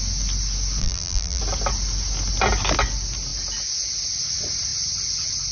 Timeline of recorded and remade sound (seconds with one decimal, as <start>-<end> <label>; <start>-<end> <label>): 0.0-0.8 recorded; 0.8-1.4 remade; 1.4-5.5 recorded